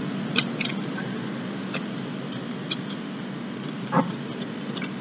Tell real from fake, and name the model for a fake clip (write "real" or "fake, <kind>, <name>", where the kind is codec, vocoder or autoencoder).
real